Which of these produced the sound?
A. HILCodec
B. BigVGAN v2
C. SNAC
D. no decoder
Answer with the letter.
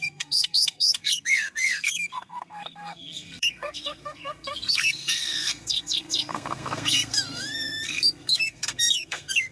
C